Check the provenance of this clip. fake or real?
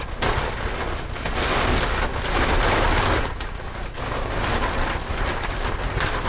real